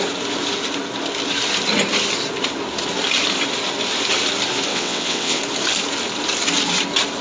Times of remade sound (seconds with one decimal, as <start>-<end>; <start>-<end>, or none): 4.7-5.4